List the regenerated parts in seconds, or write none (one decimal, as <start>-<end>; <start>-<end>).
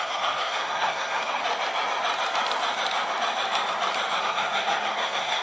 0.0-1.4; 4.2-5.4